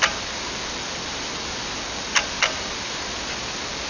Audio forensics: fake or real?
real